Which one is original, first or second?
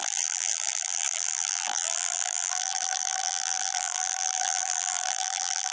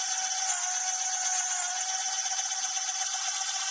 second